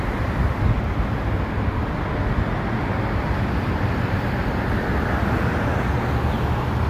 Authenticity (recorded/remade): recorded